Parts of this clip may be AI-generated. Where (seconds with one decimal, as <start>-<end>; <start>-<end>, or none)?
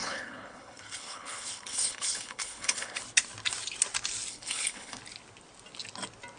0.0-3.0; 4.3-5.0